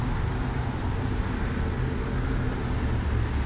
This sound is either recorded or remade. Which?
recorded